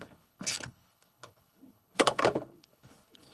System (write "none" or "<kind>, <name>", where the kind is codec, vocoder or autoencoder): codec, HILCodec